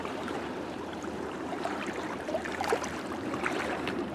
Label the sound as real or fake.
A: fake